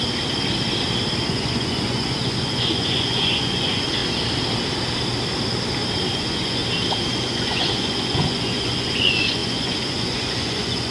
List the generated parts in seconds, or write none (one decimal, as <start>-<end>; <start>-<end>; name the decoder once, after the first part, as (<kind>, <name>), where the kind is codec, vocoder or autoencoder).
1.3-4.0 (vocoder, Vocos); 6.1-6.6; 7.1-10.9